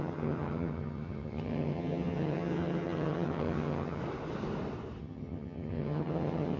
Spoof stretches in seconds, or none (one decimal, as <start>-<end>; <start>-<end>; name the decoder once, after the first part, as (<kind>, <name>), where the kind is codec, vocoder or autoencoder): 0.0-4.0 (vocoder, HiFi-GAN); 5.0-6.6